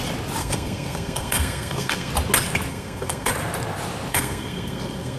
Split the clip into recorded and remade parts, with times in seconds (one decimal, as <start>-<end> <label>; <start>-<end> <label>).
0.0-0.4 recorded; 0.4-2.1 remade; 2.1-2.7 recorded; 2.7-3.3 remade; 3.3-4.1 recorded; 4.1-5.2 remade